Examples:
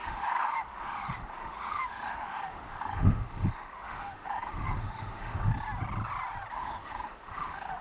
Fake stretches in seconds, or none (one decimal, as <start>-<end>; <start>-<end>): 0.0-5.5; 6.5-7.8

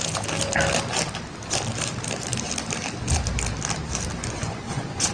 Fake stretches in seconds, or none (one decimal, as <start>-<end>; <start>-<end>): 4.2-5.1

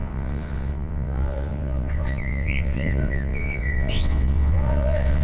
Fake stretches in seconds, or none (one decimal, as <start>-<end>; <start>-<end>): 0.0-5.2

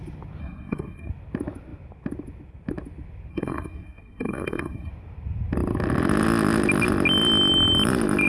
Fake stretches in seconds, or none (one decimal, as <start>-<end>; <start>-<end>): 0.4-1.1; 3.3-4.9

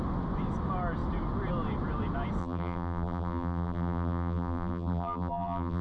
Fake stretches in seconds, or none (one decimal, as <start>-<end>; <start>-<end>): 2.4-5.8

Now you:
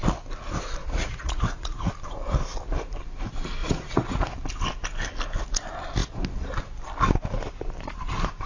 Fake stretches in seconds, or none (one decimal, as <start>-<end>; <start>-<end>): 0.8-1.9; 3.6-4.2

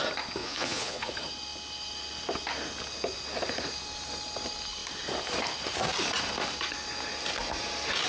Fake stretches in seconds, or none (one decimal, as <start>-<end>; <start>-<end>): 0.4-1.1

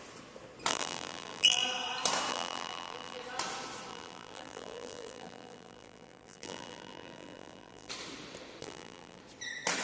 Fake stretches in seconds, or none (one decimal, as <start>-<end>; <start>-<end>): 0.7-1.6; 2.3-3.2; 3.9-7.9; 8.6-9.2